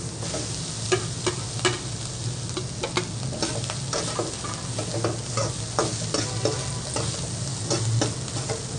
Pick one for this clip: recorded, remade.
recorded